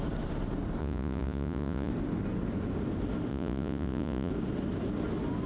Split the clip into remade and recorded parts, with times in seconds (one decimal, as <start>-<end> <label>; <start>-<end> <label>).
0.0-0.8 recorded; 0.8-1.9 remade; 1.9-3.3 recorded; 3.3-4.3 remade; 4.3-5.5 recorded